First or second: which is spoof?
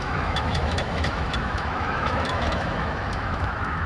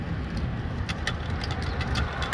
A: first